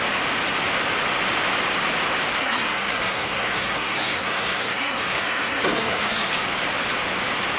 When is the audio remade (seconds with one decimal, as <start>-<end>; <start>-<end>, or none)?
2.4-6.3